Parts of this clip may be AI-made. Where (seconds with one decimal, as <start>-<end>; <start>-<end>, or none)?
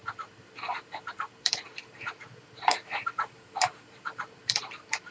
0.0-5.1